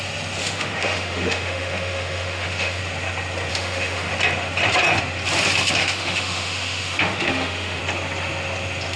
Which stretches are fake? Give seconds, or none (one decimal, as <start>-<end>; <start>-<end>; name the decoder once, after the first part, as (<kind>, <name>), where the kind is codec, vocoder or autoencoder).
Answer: 0.4-2.8 (autoencoder, DAC-VAE); 3.5-4.1; 5.8-7.8